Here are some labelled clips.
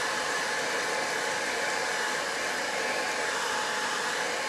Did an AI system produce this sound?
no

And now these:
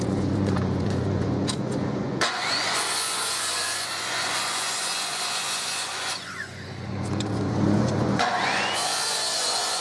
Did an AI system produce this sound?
yes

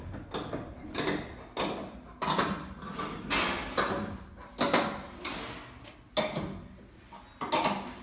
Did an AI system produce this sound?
no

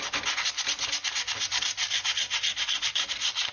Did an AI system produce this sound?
no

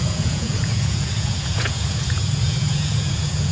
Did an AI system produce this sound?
yes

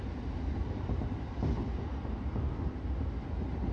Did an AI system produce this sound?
no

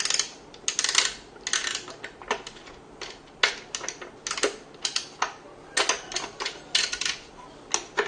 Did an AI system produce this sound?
no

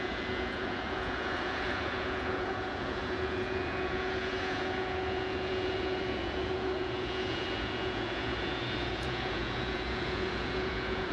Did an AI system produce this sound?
yes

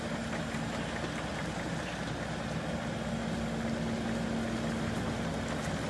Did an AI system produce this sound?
no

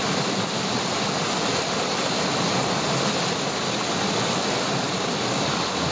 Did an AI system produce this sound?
no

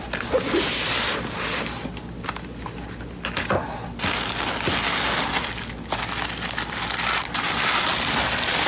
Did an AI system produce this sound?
no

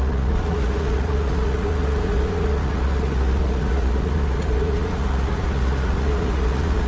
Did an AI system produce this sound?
yes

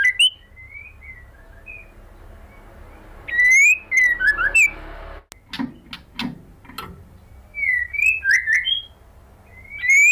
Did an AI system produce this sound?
no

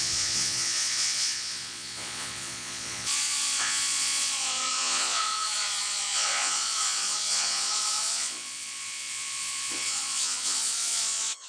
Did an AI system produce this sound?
yes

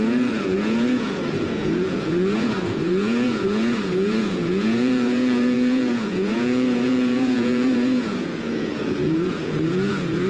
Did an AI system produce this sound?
yes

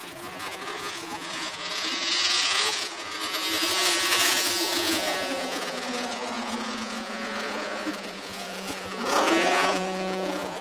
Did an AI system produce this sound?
yes